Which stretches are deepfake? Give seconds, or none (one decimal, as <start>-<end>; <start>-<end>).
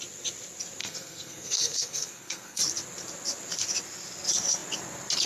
0.8-2.6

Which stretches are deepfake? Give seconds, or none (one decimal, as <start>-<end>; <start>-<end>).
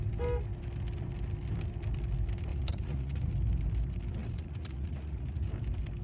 2.5-3.3; 4.2-5.5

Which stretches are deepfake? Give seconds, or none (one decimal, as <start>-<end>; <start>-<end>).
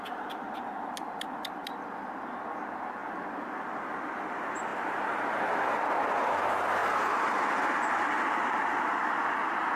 6.8-7.5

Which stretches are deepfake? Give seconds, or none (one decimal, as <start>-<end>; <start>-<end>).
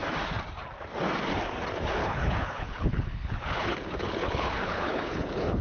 2.0-5.6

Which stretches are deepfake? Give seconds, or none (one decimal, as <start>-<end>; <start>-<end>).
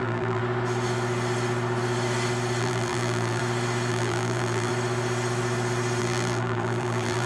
0.0-0.4; 2.6-3.4; 3.9-4.7; 6.0-7.3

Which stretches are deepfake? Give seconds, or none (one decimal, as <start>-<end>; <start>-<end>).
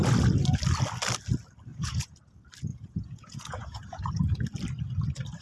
1.7-2.2; 2.7-4.2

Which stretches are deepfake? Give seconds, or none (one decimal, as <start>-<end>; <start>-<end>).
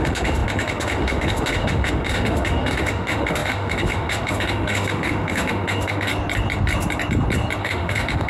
0.0-6.1; 7.6-8.3